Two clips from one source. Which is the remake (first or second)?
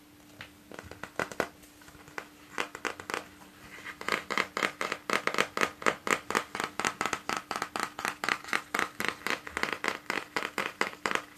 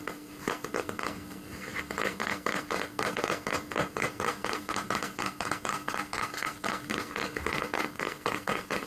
second